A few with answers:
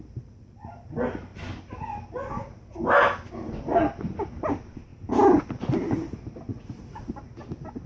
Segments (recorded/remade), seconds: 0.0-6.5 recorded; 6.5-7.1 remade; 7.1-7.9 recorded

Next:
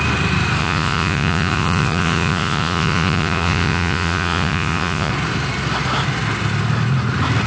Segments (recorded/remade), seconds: 0.0-0.6 recorded; 0.6-5.1 remade; 5.1-7.5 recorded